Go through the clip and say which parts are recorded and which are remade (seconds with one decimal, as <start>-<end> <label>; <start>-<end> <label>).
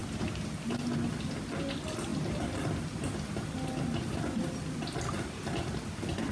0.0-6.3 recorded